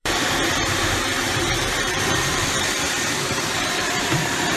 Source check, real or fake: fake